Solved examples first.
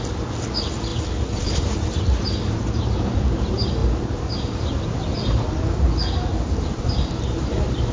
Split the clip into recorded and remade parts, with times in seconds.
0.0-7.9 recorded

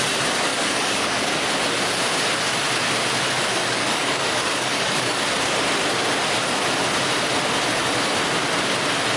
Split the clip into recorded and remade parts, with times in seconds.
0.0-0.5 recorded; 0.5-1.3 remade; 1.3-3.6 recorded; 3.6-5.2 remade; 5.2-9.2 recorded

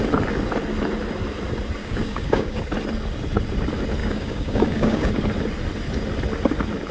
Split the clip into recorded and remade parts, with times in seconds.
0.0-1.8 recorded; 1.8-2.6 remade; 2.6-4.0 recorded; 4.0-5.1 remade; 5.1-6.9 recorded

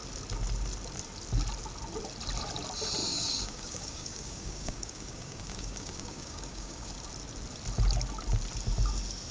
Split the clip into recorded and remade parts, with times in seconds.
0.0-3.0 recorded; 3.0-6.9 remade; 6.9-9.3 recorded

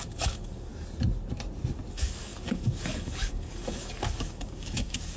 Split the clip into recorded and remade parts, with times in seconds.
0.0-0.7 remade; 0.7-1.9 recorded; 1.9-5.2 remade